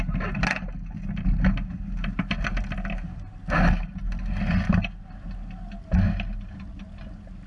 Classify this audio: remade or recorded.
recorded